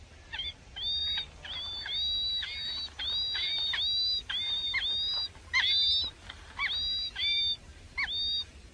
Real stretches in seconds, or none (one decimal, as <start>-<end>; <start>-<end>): 0.0-8.7